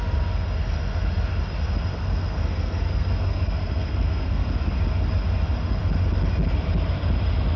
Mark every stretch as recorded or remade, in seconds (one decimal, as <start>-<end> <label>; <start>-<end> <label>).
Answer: 0.0-1.9 recorded; 1.9-4.5 remade; 4.5-7.6 recorded